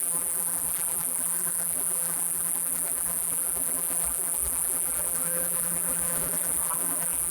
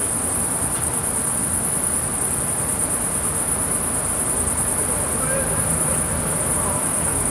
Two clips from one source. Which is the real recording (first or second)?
second